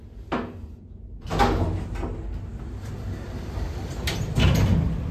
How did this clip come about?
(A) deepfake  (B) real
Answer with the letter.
B